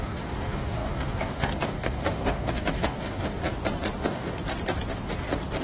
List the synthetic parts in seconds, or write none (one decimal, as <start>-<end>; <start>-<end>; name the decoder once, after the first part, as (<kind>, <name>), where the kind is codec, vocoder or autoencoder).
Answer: 0.0-3.4 (codec, DAC); 4.0-4.4